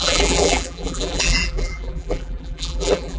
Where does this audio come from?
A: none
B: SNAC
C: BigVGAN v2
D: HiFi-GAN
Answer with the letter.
C